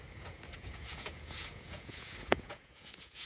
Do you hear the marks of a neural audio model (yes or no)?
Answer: yes